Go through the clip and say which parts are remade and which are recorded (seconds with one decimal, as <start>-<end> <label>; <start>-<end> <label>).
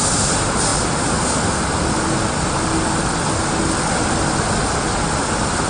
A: 0.0-5.7 recorded